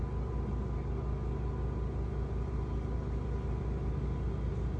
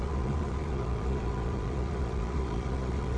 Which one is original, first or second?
first